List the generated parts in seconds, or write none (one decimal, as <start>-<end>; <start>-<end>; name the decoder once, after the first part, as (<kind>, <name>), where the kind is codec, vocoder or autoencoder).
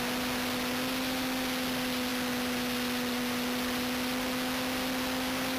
none